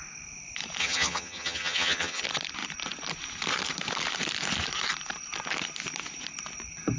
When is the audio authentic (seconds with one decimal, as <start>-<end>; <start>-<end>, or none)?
0.0-0.8; 2.2-7.0